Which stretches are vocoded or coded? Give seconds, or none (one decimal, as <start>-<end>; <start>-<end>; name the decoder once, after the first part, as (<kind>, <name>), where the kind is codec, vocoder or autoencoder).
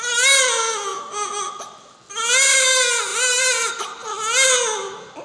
3.1-4.2 (vocoder, BigVGAN v2)